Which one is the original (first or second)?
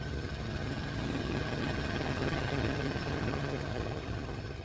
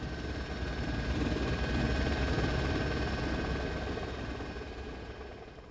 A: second